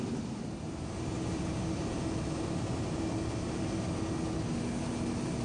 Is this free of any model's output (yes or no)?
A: yes